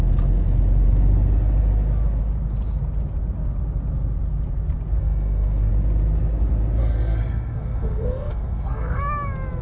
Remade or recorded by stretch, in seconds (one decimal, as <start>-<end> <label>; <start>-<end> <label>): 0.0-5.0 recorded; 5.0-5.7 remade; 5.7-6.8 recorded; 6.8-9.0 remade; 9.0-9.6 recorded